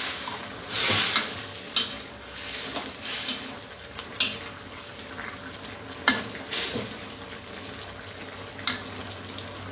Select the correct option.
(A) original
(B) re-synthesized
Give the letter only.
A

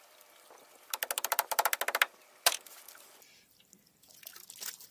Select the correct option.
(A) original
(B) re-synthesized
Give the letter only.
A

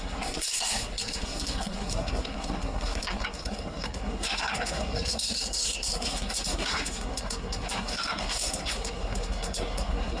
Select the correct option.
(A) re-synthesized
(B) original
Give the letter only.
A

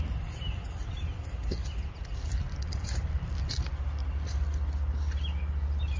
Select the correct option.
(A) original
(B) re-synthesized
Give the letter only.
A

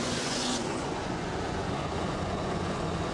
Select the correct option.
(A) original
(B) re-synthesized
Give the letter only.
B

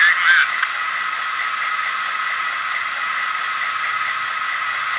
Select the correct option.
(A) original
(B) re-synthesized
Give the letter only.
A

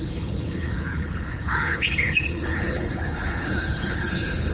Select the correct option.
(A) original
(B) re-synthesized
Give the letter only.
B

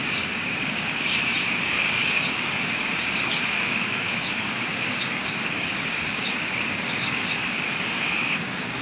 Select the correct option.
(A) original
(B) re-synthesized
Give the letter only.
B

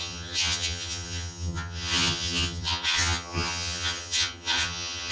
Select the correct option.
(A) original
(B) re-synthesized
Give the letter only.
B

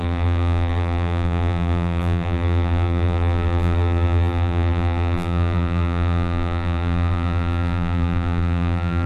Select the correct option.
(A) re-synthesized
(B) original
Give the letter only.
A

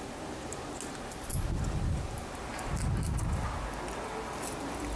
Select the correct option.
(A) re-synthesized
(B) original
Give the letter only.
B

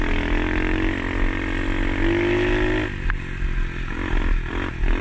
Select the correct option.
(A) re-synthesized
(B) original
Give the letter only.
B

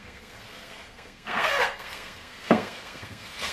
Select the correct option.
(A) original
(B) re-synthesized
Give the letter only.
B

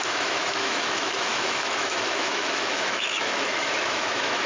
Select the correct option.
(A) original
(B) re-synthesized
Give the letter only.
B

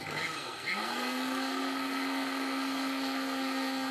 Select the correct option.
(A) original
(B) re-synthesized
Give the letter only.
B